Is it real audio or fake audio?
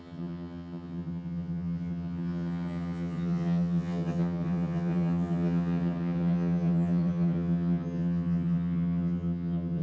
fake